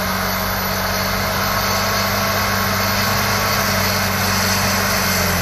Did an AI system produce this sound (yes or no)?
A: no